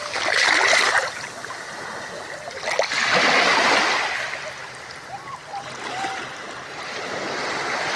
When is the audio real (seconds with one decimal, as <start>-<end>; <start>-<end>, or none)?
0.0-8.0